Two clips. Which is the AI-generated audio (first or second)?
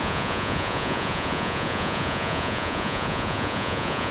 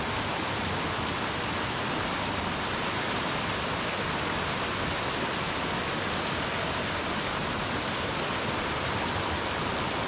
first